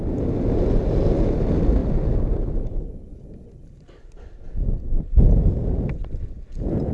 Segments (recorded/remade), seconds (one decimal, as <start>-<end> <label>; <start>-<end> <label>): 0.0-6.9 recorded